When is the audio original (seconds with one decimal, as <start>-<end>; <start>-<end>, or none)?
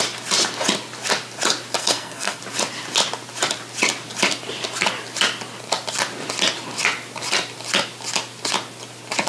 0.0-1.8; 2.4-9.3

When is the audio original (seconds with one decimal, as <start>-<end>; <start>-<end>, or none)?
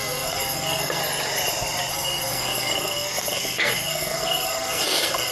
1.0-1.9